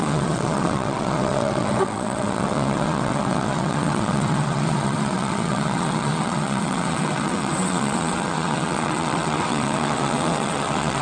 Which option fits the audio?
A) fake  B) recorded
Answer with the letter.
A